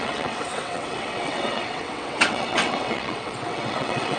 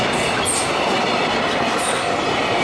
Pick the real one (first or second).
second